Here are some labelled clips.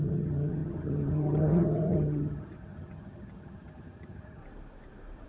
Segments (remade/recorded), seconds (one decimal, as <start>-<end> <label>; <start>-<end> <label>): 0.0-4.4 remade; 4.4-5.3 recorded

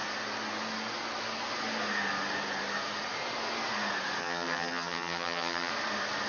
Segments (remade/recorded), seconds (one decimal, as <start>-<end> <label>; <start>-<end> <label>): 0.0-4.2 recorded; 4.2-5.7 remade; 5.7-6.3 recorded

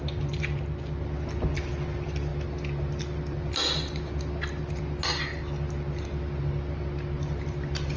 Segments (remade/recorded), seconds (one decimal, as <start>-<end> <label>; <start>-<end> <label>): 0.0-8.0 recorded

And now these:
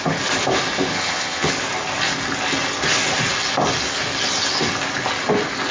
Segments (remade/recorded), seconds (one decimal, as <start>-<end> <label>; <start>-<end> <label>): 0.0-0.9 recorded; 0.9-1.5 remade; 1.5-5.7 recorded

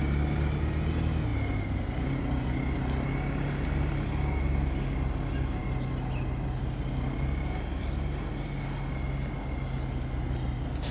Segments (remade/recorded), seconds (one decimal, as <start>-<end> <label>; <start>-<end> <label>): 0.0-10.9 recorded

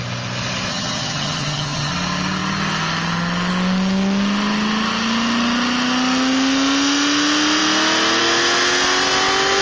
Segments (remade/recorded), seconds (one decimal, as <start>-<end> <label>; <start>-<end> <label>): 0.0-0.7 recorded; 0.7-1.9 remade; 1.9-9.6 recorded

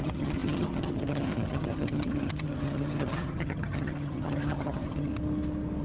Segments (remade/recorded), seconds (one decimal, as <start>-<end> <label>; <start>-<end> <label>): 0.0-5.1 remade; 5.1-5.8 recorded

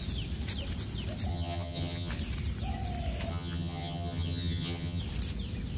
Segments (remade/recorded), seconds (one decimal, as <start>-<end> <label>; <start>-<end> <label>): 0.0-1.3 recorded; 1.3-2.1 remade; 2.1-3.3 recorded; 3.3-5.0 remade; 5.0-5.8 recorded